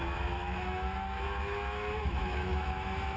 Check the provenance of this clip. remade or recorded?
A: remade